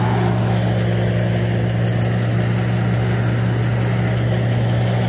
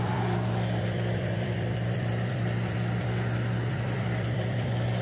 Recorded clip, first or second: first